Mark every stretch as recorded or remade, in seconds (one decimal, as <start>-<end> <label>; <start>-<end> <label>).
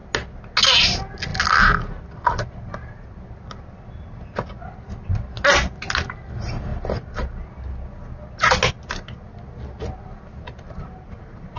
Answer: 0.0-11.6 recorded